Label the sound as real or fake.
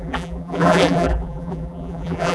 fake